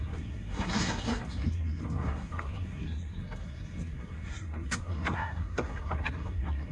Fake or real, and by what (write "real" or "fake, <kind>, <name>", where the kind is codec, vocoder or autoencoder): fake, codec, SNAC